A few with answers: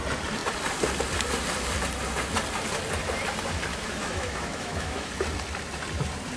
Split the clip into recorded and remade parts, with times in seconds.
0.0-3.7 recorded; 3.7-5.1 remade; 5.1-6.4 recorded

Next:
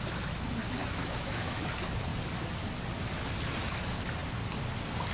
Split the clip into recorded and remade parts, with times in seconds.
0.0-0.8 recorded; 0.8-1.6 remade; 1.6-5.1 recorded

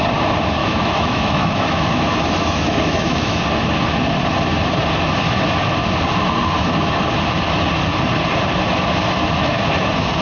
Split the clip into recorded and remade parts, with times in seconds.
0.0-0.6 recorded; 0.6-3.4 remade; 3.4-10.2 recorded

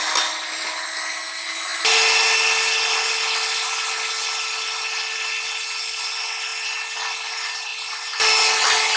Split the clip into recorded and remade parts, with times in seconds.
0.0-9.0 recorded

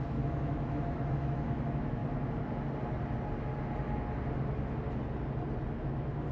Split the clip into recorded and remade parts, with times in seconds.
0.0-2.0 remade; 2.0-5.8 recorded; 5.8-6.3 remade

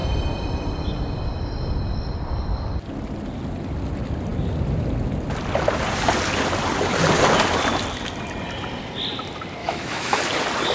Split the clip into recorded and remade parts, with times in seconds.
0.0-9.6 recorded; 9.6-10.2 remade; 10.2-10.7 recorded